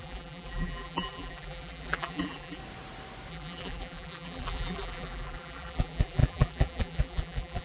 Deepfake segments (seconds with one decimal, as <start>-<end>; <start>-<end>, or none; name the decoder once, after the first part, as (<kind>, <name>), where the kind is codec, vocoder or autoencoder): 0.0-2.6 (vocoder, BigVGAN v2); 3.3-7.6